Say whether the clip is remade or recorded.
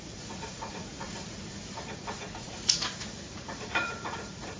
remade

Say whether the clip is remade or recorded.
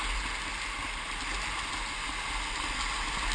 recorded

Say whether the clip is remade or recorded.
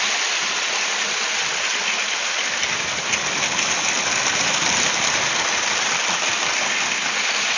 recorded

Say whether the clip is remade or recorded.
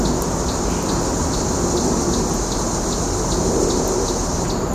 recorded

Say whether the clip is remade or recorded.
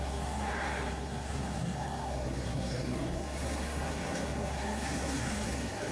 remade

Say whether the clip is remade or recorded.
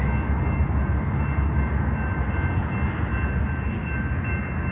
recorded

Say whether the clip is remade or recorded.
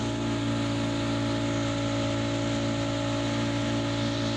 recorded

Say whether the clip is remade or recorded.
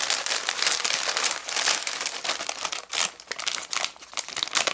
recorded